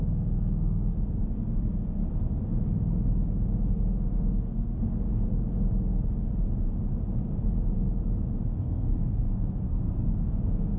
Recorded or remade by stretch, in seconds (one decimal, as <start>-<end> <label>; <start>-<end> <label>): 0.0-0.9 remade; 0.9-1.6 recorded; 1.6-2.0 remade; 2.0-3.7 recorded; 3.7-5.3 remade; 5.3-8.6 recorded; 8.6-10.8 remade